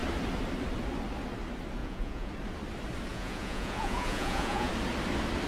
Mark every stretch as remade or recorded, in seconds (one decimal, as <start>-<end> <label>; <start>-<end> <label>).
0.0-1.8 recorded; 1.8-2.3 remade; 2.3-3.1 recorded; 3.1-4.7 remade; 4.7-5.5 recorded